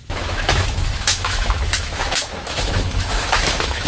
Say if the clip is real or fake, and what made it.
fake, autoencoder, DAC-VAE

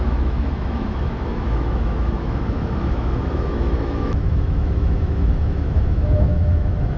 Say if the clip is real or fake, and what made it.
fake, autoencoder, DAC-VAE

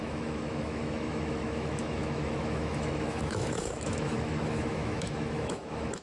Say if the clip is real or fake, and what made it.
fake, autoencoder, DAC-VAE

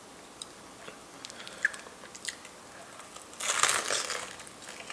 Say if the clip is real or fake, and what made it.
real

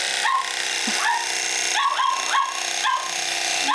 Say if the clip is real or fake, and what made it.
real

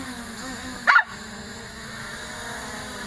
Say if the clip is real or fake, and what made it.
fake, autoencoder, DAC-VAE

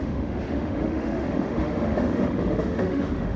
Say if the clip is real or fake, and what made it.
fake, autoencoder, DAC-VAE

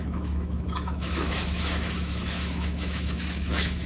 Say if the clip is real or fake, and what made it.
fake, autoencoder, DAC-VAE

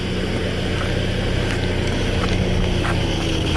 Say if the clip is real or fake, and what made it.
real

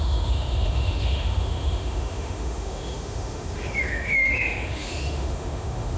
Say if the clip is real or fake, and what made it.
fake, autoencoder, DAC-VAE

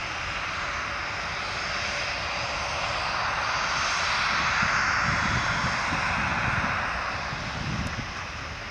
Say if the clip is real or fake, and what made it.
real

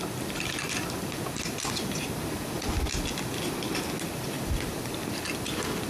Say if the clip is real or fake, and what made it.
real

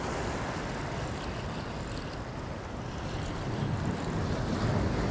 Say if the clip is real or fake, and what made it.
real